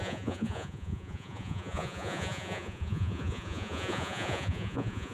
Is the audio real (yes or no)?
no